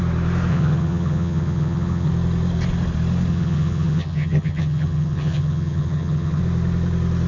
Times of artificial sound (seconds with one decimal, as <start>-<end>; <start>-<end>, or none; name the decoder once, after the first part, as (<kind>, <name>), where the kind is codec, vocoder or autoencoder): 0.5-2.1 (vocoder, HiFi-GAN); 3.3-6.4